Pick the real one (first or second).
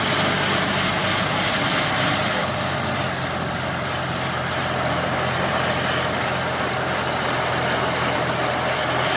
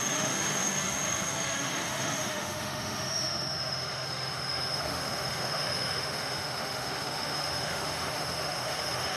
first